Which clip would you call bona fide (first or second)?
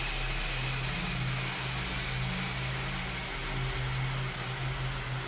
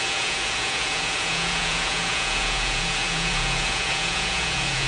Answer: first